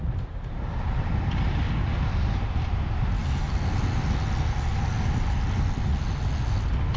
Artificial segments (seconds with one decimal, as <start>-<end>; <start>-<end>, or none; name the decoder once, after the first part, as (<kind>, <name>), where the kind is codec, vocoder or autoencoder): none